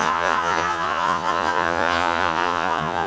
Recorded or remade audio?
remade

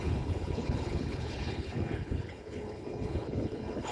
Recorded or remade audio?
remade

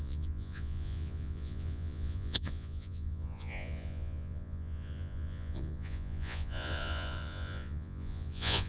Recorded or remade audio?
remade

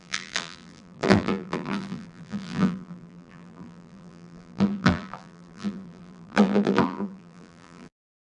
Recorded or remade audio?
remade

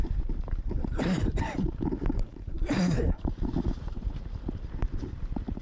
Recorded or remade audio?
remade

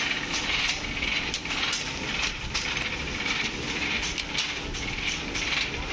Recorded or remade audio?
recorded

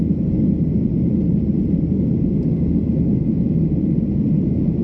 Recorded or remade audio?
recorded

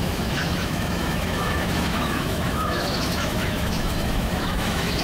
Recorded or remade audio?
remade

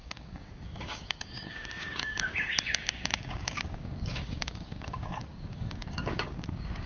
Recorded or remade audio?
remade